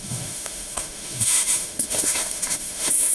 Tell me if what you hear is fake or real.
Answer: fake